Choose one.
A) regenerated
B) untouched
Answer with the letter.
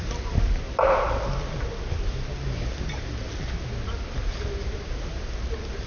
B